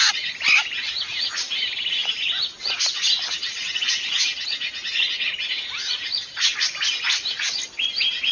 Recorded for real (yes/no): yes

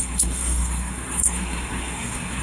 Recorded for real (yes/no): no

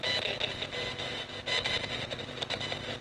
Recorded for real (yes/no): yes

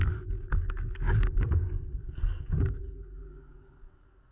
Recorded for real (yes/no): no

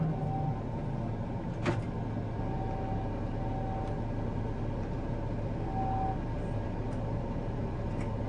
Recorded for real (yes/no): yes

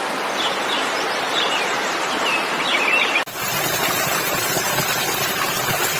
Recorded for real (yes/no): no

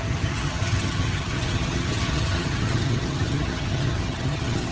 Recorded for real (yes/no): no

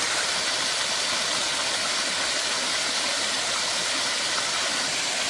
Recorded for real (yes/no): yes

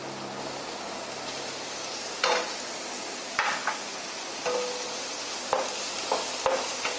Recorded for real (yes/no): yes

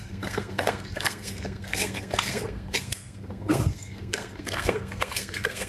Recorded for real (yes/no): no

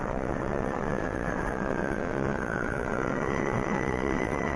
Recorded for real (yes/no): no